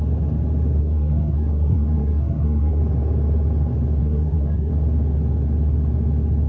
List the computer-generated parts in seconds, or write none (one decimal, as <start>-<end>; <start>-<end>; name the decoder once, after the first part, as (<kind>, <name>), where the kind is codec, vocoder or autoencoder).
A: 0.8-2.8 (codec, SNAC); 4.0-4.7